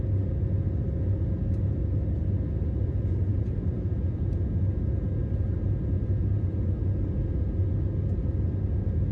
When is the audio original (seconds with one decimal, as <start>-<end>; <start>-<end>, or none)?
0.0-3.3; 3.9-9.1